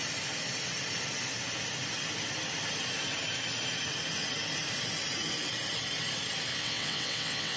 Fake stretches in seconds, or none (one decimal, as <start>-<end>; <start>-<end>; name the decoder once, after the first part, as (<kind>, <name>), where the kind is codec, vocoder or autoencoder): 6.5-7.6 (vocoder, WaveNeXt)